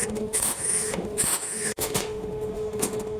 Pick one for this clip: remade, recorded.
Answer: remade